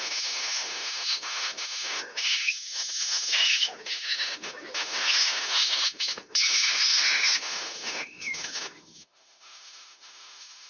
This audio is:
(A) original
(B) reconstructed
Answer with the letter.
B